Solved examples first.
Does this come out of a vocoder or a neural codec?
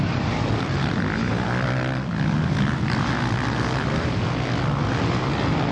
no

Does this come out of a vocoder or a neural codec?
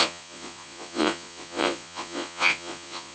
yes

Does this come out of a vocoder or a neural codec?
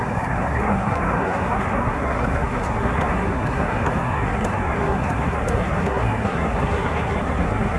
yes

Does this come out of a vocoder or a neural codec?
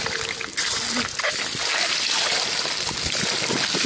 yes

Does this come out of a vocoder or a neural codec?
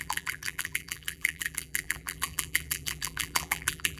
yes